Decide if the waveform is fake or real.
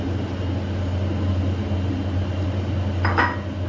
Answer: real